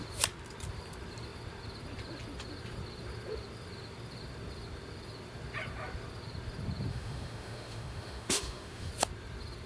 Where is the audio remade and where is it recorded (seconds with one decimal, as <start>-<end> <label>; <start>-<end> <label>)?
0.0-6.9 recorded; 6.9-8.9 remade; 8.9-9.7 recorded